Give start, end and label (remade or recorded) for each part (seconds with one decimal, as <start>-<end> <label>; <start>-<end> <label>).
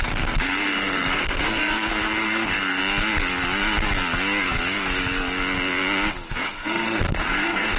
0.0-2.8 remade; 2.8-6.3 recorded; 6.3-7.8 remade